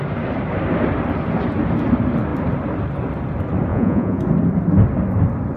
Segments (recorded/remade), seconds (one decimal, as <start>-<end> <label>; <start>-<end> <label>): 0.0-3.7 recorded; 3.7-4.2 remade; 4.2-5.6 recorded